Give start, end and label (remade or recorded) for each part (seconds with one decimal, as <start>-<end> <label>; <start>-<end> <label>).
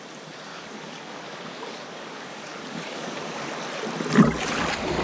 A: 0.0-0.5 recorded; 0.5-3.5 remade; 3.5-5.0 recorded